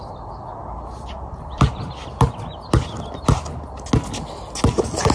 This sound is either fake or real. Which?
real